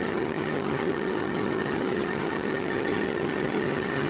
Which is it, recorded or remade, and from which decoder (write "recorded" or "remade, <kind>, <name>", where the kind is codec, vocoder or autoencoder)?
remade, vocoder, HiFi-GAN